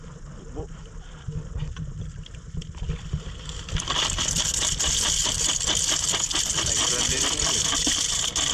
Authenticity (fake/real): fake